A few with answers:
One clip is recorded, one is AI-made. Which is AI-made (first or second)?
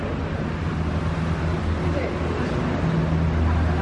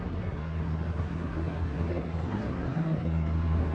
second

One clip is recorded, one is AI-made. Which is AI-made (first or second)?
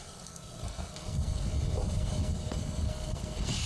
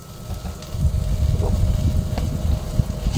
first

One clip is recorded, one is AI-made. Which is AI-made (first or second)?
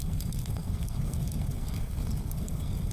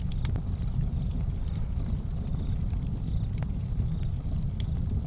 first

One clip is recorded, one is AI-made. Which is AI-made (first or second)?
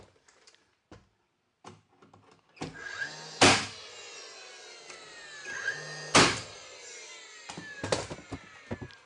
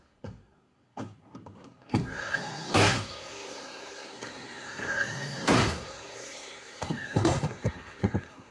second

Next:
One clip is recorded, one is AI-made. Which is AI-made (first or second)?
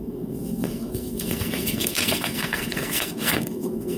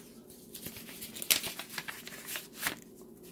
first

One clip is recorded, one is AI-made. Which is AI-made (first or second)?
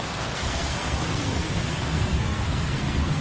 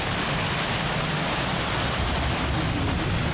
first